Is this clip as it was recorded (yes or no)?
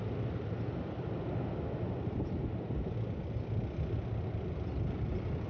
yes